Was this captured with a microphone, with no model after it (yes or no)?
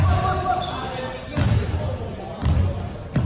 yes